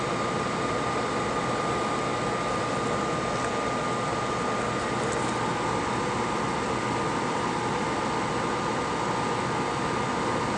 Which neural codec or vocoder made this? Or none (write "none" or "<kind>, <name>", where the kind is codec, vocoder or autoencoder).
none